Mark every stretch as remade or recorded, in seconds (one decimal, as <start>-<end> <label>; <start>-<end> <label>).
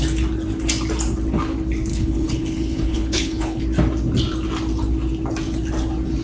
0.0-1.9 recorded; 1.9-3.6 remade; 3.6-6.2 recorded